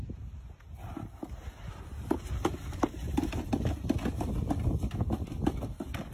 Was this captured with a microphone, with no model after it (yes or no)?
yes